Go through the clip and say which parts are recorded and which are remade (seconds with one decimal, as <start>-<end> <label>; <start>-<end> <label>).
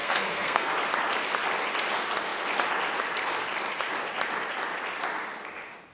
0.0-0.7 remade; 0.7-5.9 recorded